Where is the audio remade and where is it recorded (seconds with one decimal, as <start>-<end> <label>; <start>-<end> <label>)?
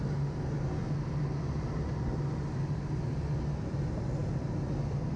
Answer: 0.0-5.2 recorded